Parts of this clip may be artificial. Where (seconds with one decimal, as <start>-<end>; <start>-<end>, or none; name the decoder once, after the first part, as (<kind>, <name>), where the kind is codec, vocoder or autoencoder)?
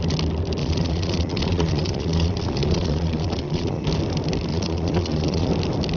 0.6-3.8 (vocoder, Vocos); 4.5-5.5